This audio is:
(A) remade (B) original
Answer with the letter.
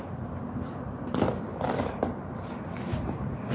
B